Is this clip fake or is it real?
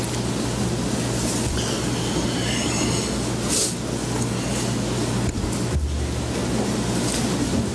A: real